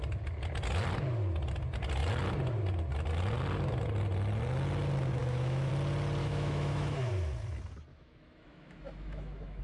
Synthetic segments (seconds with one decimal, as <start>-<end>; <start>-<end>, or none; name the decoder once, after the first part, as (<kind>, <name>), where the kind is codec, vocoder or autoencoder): 5.2-5.7 (autoencoder, DAC-VAE); 6.2-7.1; 7.9-9.6